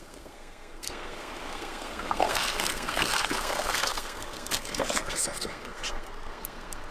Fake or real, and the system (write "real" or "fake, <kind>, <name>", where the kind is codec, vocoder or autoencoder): fake, codec, SNAC